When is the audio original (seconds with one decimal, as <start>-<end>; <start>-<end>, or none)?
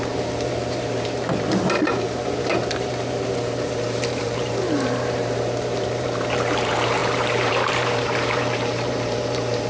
none